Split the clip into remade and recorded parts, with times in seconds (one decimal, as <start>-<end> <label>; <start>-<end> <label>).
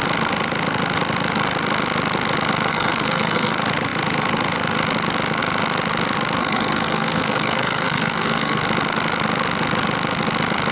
0.0-2.7 recorded; 2.7-3.5 remade; 3.5-6.4 recorded; 6.4-8.6 remade; 8.6-10.7 recorded